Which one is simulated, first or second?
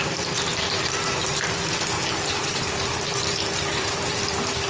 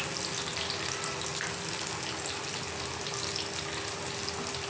first